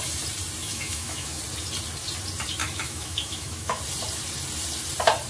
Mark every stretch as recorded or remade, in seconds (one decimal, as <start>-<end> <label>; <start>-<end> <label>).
0.0-0.6 recorded; 0.6-1.4 remade; 1.4-2.6 recorded; 2.6-3.8 remade; 3.8-5.3 recorded

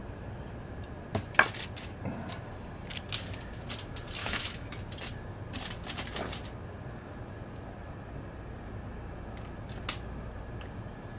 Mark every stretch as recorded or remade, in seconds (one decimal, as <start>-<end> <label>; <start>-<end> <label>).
0.0-4.2 recorded; 4.2-4.7 remade; 4.7-11.2 recorded

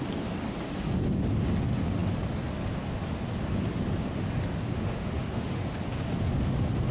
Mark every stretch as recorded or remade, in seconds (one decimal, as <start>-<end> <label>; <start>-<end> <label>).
0.0-4.7 recorded; 4.7-5.6 remade; 5.6-6.9 recorded

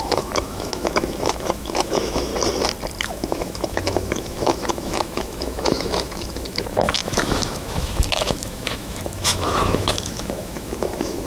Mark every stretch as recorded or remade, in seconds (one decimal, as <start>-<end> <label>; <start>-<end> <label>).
0.0-2.3 remade; 2.3-3.0 recorded; 3.0-11.3 remade

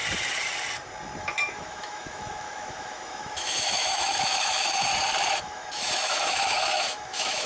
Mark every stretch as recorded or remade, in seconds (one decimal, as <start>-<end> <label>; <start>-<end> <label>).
0.0-1.2 recorded; 1.2-4.9 remade; 4.9-5.4 recorded; 5.4-7.5 remade

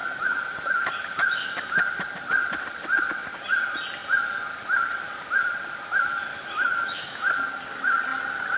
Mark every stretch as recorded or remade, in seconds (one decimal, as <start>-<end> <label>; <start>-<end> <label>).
0.0-1.6 remade; 1.6-6.3 recorded; 6.3-7.3 remade; 7.3-8.6 recorded

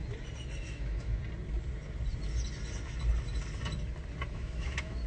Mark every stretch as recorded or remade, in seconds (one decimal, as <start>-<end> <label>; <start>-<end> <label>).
0.0-0.6 recorded; 0.6-1.2 remade; 1.2-4.3 recorded; 4.3-5.1 remade